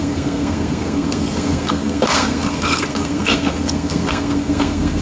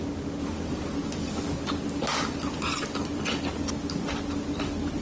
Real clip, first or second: second